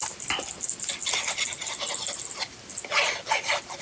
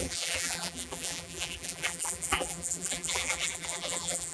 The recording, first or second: first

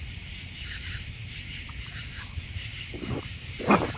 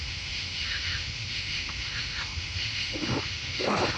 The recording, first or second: first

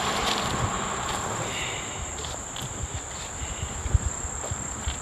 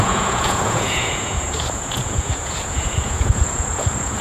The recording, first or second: first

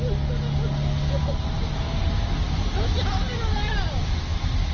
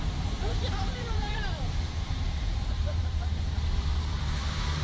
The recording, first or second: first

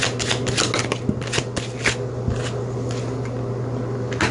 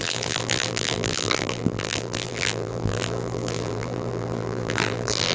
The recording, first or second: first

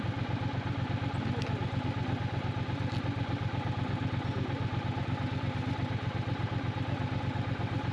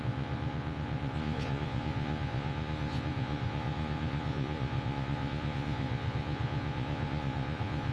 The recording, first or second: first